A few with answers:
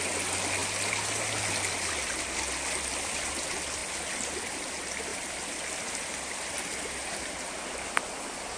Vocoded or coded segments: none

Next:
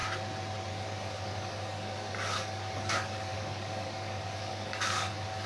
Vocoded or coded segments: 0.7-5.5 (codec, DAC)

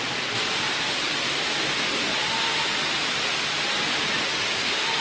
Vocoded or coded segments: 4.3-5.0 (codec, DAC)

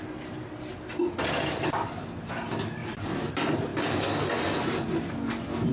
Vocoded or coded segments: none